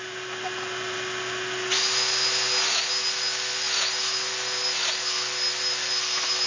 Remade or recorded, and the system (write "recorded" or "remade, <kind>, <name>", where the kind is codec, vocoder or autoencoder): recorded